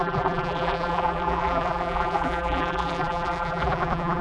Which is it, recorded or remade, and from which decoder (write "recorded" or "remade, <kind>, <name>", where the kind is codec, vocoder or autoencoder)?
remade, vocoder, BigVGAN v2